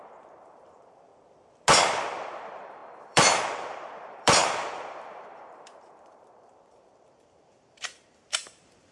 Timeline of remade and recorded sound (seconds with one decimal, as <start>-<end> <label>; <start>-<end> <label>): 0.0-1.1 remade; 1.1-2.2 recorded; 2.2-8.9 remade